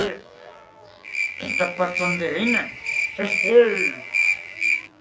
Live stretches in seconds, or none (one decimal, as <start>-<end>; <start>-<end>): 2.3-3.2